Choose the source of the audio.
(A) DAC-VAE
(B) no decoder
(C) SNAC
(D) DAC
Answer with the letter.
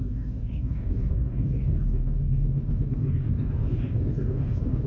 D